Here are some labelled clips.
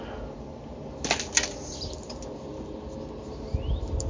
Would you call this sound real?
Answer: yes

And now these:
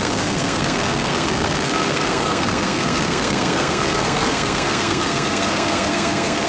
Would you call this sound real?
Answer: no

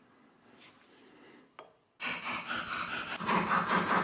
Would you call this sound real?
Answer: yes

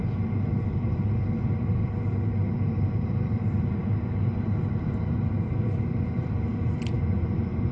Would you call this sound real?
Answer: yes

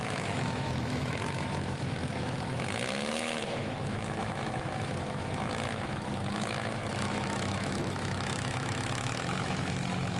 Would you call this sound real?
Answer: no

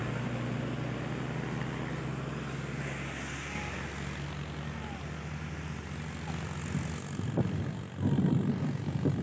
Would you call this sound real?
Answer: yes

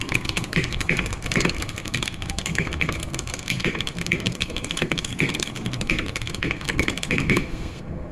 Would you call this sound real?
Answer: no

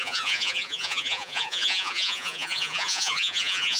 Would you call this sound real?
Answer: no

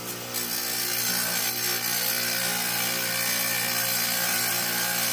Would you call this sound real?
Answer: yes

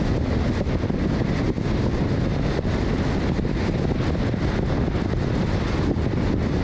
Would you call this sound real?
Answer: yes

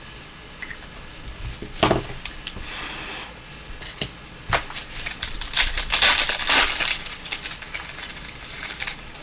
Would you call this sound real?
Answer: yes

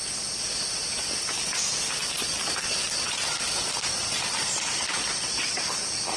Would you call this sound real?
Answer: yes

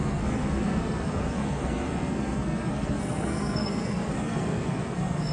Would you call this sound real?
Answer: no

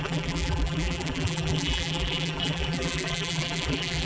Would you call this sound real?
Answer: no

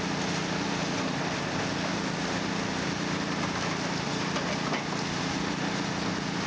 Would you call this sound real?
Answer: yes